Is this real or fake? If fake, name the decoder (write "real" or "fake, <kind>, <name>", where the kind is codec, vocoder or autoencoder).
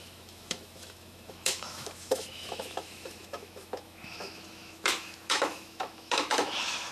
fake, autoencoder, DAC-VAE